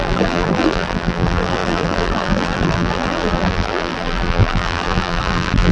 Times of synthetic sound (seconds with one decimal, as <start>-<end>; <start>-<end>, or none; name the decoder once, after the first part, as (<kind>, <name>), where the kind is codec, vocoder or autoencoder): 0.0-5.7 (vocoder, BigVGAN v2)